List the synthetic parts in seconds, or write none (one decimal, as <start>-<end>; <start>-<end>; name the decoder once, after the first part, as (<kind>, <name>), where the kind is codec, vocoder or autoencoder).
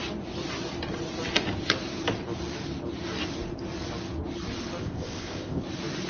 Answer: 4.8-5.6 (codec, ZipCodec)